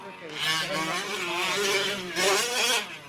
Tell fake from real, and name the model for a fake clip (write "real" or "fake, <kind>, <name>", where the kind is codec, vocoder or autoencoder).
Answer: real